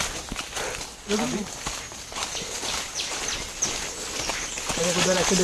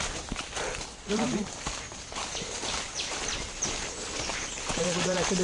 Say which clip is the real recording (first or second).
first